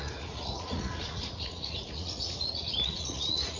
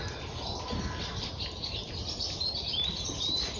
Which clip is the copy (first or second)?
first